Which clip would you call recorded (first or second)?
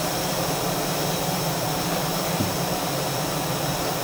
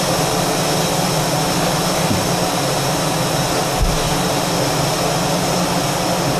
second